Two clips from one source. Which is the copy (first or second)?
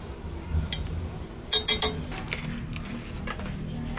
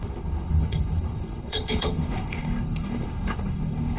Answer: second